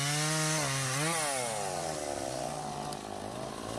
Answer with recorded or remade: recorded